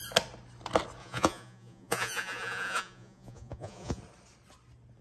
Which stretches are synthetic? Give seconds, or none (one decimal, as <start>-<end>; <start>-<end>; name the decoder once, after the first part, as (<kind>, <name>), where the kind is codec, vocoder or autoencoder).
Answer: 1.0-4.0 (vocoder, Vocos)